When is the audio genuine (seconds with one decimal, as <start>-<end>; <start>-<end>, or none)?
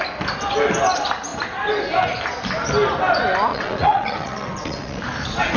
0.0-3.5; 5.0-5.6